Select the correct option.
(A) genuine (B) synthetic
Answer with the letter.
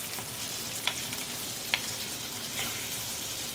B